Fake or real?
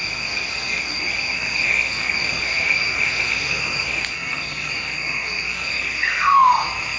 fake